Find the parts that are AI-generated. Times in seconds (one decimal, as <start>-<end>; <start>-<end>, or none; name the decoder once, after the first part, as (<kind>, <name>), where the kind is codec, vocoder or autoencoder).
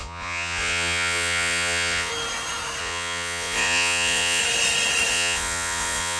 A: 0.0-2.1 (vocoder, Vocos); 2.8-4.4; 5.1-6.2